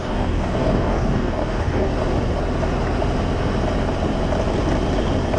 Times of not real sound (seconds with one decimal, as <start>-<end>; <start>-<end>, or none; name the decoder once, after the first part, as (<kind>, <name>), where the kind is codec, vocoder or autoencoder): 0.0-1.9 (codec, DAC)